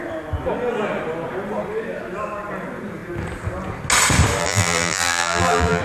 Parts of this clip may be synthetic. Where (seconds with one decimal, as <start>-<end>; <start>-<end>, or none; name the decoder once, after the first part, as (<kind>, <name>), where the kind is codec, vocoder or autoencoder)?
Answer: 4.4-5.8 (vocoder, BigVGAN v2)